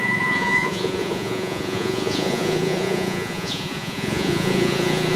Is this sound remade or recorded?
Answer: remade